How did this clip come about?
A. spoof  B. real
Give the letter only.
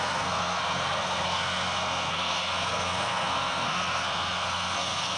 A